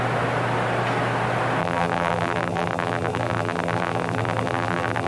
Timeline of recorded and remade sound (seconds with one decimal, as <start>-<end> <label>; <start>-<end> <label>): 0.0-1.6 recorded; 1.6-5.1 remade